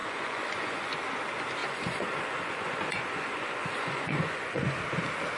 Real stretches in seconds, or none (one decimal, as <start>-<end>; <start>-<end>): 0.9-1.6; 4.8-5.4